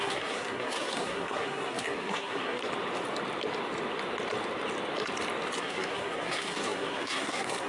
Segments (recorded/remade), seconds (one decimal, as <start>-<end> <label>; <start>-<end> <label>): 0.0-2.6 remade; 2.6-5.6 recorded; 5.6-7.7 remade